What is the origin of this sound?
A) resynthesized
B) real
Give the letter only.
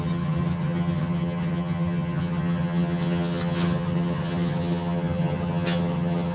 A